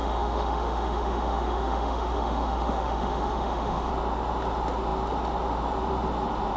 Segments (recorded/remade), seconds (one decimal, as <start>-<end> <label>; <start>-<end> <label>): 0.0-3.9 remade; 3.9-6.6 recorded